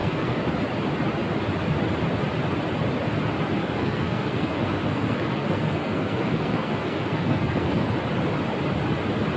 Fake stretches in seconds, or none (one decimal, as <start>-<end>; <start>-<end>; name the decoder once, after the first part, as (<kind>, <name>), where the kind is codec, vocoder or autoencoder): 0.0-0.5 (codec, SNAC); 3.6-7.9